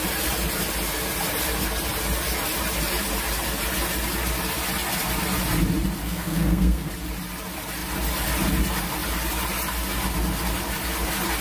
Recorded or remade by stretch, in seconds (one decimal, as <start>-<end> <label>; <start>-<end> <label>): 0.0-6.0 recorded; 6.0-6.9 remade; 6.9-11.4 recorded